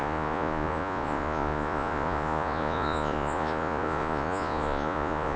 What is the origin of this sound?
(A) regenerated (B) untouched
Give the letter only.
A